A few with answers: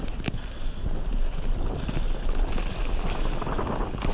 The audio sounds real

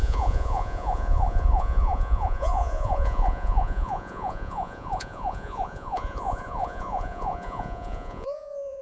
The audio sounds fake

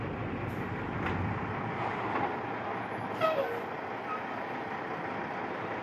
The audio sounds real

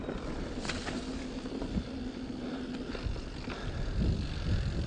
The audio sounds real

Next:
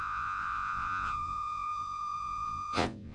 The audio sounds fake